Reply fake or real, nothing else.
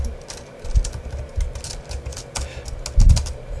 real